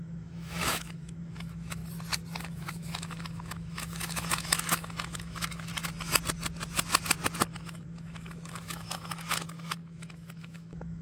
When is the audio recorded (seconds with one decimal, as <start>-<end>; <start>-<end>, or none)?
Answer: 1.8-2.4; 5.7-7.5